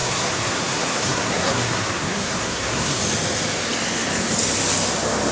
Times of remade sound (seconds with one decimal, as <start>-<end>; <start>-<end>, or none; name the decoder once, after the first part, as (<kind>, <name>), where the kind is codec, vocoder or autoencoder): 0.0-3.0 (codec, SNAC)